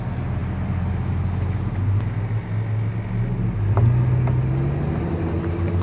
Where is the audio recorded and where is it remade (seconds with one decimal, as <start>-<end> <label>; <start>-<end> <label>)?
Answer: 0.0-5.8 recorded